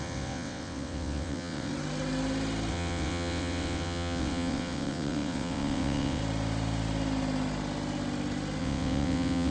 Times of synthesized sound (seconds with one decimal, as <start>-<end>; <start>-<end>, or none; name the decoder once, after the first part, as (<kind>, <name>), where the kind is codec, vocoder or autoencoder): 0.0-1.7 (vocoder, WaveNeXt); 2.7-6.2; 8.6-9.5